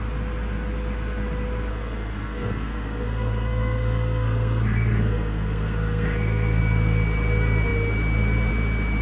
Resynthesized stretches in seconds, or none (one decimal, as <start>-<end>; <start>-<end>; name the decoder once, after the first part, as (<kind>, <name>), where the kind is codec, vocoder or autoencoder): 1.7-6.6 (codec, SNAC)